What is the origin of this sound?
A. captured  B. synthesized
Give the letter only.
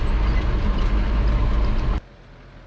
A